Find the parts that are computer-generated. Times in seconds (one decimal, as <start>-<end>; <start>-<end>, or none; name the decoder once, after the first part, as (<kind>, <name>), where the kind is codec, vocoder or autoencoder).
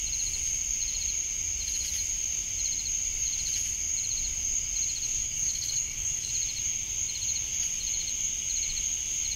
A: 5.2-6.3 (codec, DAC)